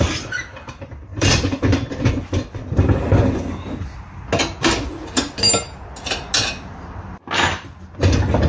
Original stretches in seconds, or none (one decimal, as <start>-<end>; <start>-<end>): 0.0-1.1; 1.9-8.5